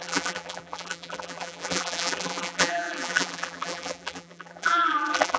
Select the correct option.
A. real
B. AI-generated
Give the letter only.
B